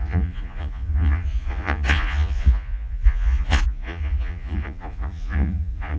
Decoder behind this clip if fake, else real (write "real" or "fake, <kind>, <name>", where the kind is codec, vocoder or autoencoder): fake, vocoder, Vocos